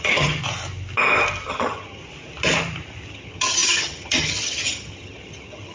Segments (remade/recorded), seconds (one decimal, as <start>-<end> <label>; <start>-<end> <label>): 0.0-0.4 remade; 0.4-1.5 recorded; 1.5-2.0 remade; 2.0-3.1 recorded; 3.1-5.7 remade